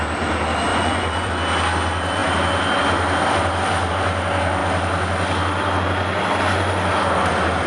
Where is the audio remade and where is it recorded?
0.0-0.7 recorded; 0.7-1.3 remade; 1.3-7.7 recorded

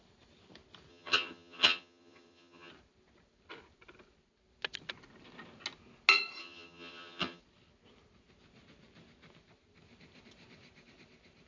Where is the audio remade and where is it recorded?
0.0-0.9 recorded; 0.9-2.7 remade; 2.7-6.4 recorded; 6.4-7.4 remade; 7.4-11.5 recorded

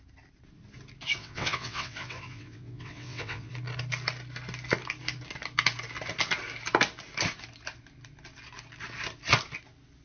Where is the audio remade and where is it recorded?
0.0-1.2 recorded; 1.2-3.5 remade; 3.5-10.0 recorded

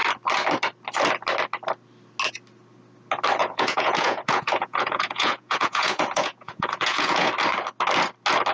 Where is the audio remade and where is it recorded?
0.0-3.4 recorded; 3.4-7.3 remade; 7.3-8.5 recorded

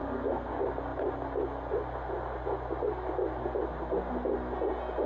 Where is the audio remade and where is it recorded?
0.0-0.5 remade; 0.5-5.1 recorded